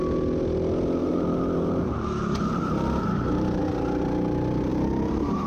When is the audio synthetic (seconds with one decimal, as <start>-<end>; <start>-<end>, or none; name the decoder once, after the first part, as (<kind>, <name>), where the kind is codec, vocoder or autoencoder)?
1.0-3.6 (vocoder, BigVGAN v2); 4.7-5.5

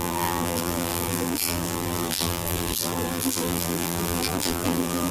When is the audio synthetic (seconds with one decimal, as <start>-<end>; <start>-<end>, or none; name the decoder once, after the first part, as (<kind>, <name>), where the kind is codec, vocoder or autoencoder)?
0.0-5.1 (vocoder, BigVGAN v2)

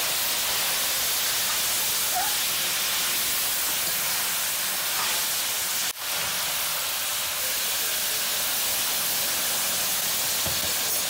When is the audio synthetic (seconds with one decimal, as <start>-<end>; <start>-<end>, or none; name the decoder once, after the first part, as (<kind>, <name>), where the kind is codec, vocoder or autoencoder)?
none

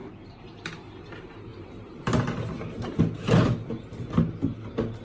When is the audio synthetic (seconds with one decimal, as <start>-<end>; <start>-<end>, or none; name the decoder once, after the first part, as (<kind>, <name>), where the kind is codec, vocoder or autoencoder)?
0.0-0.7 (vocoder, BigVGAN v2); 1.5-3.0

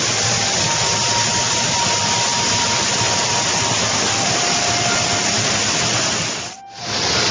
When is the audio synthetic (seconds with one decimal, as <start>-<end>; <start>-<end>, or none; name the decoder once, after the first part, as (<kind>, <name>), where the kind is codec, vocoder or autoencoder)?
2.3-4.3 (vocoder, BigVGAN v2)

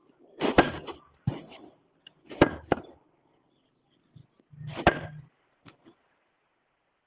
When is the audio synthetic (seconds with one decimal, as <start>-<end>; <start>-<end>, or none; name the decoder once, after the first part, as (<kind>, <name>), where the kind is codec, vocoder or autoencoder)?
0.0-4.0 (vocoder, BigVGAN v2); 4.7-7.1